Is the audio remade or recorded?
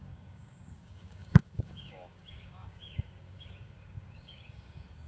remade